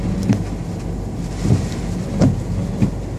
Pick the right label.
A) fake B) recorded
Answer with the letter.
B